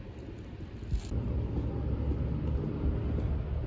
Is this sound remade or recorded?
recorded